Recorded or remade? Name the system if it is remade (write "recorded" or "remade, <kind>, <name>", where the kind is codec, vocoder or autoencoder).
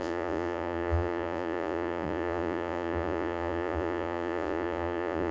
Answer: remade, vocoder, Vocos